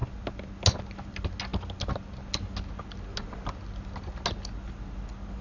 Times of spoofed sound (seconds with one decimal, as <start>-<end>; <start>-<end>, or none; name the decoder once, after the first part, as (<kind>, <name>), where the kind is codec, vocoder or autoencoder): none